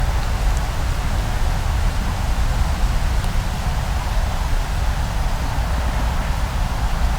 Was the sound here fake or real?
real